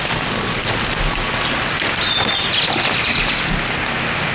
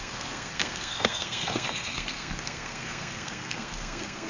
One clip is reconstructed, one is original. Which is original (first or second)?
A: first